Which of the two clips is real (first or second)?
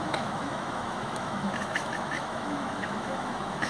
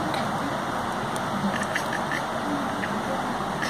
second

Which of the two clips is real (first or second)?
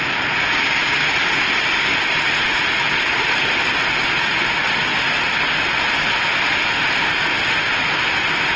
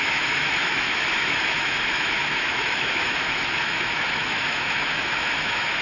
first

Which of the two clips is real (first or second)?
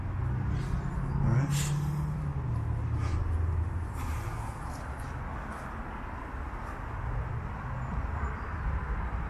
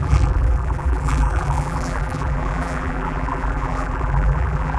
first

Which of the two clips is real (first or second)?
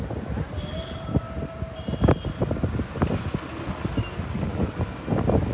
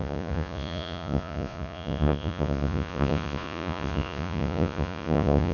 first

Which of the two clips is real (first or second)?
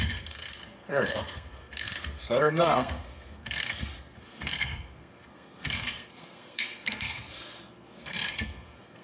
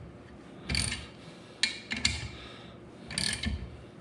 second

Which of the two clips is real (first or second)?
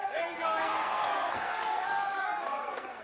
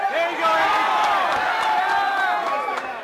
second